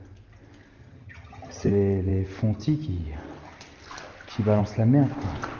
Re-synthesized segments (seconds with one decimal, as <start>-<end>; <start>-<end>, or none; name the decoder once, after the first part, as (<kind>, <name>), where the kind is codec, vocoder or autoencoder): 0.8-1.7 (vocoder, HiFi-GAN)